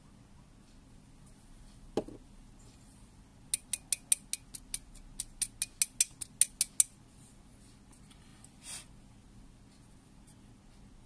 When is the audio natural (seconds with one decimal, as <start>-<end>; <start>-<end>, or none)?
0.0-11.1